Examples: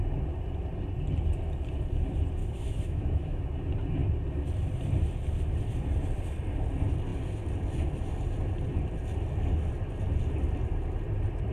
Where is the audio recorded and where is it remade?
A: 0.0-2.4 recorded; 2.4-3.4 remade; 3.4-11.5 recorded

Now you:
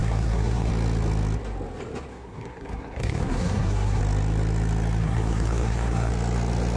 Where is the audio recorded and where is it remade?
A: 0.0-0.7 remade; 0.7-2.1 recorded; 2.1-4.0 remade; 4.0-5.0 recorded; 5.0-6.1 remade; 6.1-6.8 recorded

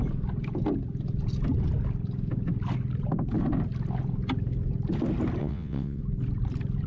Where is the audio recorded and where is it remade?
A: 0.0-5.4 recorded; 5.4-6.0 remade; 6.0-6.9 recorded

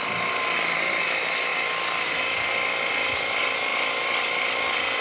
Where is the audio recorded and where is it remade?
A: 0.0-5.0 recorded

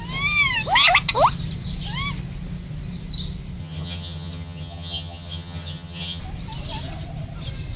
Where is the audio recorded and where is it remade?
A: 0.0-3.6 recorded; 3.6-6.2 remade; 6.2-7.8 recorded